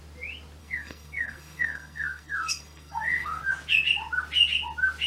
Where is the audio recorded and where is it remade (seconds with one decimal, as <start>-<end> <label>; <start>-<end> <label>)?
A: 0.0-0.6 recorded; 0.6-3.4 remade; 3.4-5.1 recorded